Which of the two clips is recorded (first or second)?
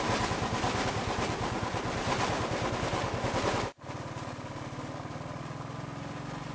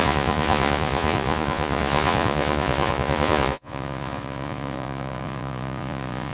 first